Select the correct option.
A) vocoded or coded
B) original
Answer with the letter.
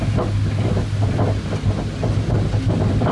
B